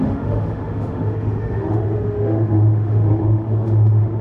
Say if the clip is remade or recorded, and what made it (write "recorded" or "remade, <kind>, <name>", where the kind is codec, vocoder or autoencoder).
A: remade, autoencoder, DAC-VAE